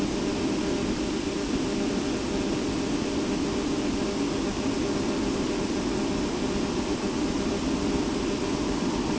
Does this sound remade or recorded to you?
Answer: recorded